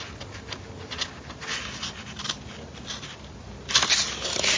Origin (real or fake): real